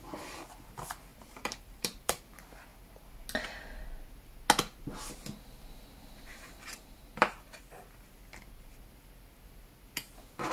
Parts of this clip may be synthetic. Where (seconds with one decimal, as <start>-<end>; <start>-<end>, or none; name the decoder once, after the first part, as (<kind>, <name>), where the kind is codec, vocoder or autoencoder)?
1.1-2.2 (vocoder, BigVGAN v2); 6.3-7.6